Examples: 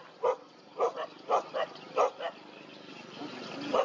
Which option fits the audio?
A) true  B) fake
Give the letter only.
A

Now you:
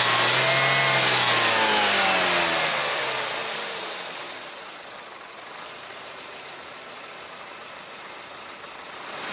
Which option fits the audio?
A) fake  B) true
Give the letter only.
B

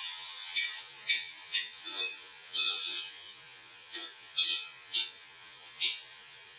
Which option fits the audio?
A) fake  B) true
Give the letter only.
A